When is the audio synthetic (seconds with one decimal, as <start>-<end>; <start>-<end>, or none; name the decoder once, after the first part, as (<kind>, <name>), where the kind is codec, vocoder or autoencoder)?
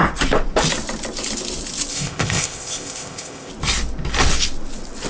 1.9-3.5 (codec, ZipCodec)